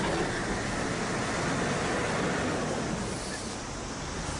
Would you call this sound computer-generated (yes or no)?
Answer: no